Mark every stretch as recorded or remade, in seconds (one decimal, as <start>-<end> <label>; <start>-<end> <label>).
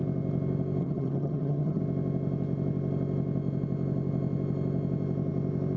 0.0-0.8 recorded; 0.8-1.8 remade; 1.8-5.8 recorded